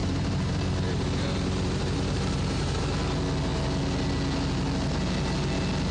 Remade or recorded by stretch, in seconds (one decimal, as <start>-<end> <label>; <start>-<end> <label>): 0.0-2.8 remade; 2.8-5.9 recorded